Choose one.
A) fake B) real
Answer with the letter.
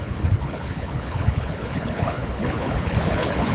A